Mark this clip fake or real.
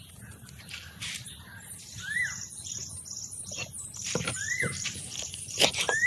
fake